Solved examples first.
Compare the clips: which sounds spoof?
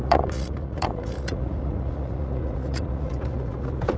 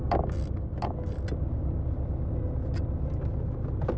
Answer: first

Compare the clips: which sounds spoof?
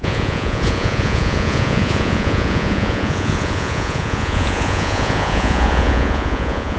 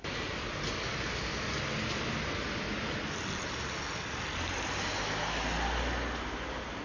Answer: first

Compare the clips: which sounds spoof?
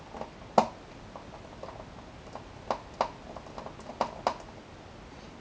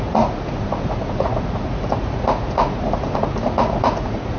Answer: second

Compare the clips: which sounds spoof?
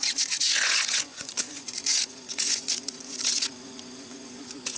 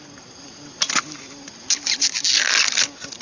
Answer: first